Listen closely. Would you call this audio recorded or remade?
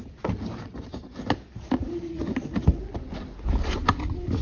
recorded